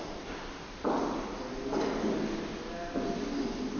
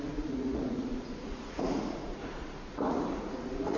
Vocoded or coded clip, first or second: second